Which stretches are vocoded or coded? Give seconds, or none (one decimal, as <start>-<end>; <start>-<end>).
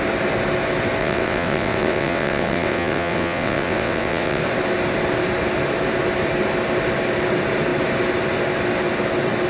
1.0-4.4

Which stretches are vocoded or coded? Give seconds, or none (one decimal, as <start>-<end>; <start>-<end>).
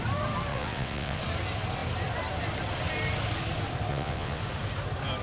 0.5-1.2; 3.9-4.4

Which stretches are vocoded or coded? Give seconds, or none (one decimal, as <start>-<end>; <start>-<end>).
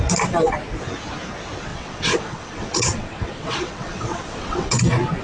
1.7-4.8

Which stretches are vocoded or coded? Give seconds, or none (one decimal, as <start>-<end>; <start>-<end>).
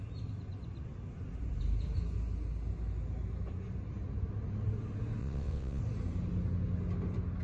5.2-5.8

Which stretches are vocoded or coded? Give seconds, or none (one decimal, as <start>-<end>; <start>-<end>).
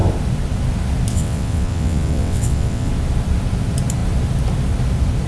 1.1-2.9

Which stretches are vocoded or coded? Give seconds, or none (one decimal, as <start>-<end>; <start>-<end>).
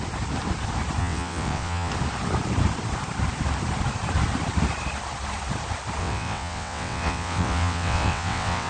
1.0-1.9; 6.0-8.7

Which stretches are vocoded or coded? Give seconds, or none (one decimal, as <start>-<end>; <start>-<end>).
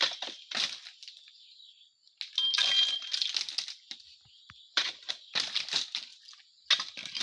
none